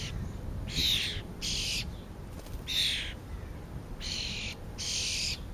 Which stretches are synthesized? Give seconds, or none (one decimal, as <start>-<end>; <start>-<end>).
none

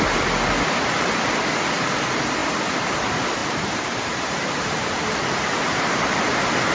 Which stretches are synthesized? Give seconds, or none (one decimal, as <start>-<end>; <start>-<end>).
3.4-6.3

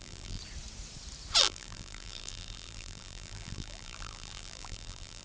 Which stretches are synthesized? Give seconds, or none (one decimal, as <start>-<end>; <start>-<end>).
0.0-0.4; 1.4-5.2

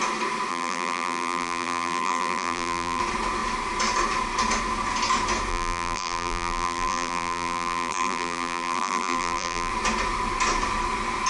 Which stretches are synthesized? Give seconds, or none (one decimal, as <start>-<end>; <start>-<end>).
0.5-3.0; 5.5-9.7